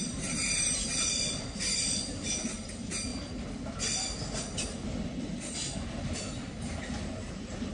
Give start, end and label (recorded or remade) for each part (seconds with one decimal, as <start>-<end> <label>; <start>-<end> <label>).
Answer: 0.0-1.1 remade; 1.1-7.7 recorded